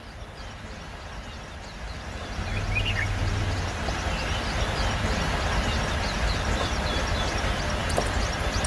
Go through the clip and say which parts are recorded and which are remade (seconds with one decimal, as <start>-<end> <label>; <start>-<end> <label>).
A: 0.0-8.7 recorded